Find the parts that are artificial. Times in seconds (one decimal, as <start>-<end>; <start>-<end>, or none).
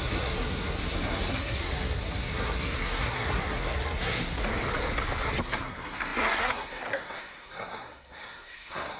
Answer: 0.0-4.4; 5.4-9.0